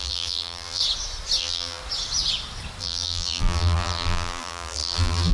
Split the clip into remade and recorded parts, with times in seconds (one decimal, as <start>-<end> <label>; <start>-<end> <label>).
0.0-0.8 remade; 0.8-1.4 recorded; 1.4-1.8 remade; 1.8-2.8 recorded; 2.8-5.3 remade